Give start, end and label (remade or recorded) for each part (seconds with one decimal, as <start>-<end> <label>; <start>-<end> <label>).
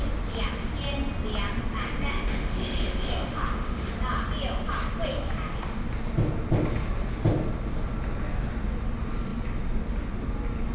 0.0-2.1 recorded; 2.1-3.9 remade; 3.9-10.7 recorded